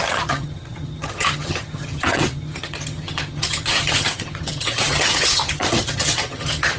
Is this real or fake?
fake